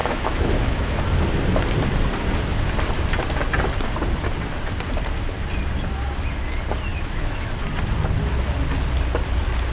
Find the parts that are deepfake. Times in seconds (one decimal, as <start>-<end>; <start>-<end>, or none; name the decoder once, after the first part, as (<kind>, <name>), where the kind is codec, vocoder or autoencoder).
0.0-1.0 (autoencoder, DAC-VAE); 6.9-7.5